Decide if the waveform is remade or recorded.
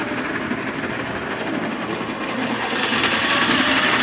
recorded